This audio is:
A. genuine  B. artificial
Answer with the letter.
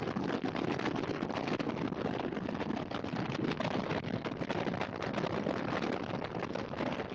A